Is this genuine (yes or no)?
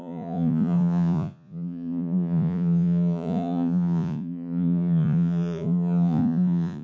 no